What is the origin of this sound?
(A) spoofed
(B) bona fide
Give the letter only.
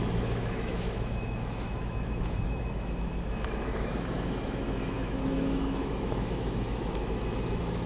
A